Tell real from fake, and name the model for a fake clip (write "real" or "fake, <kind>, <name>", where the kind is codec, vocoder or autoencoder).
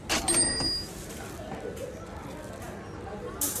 real